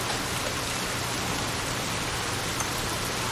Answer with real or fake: fake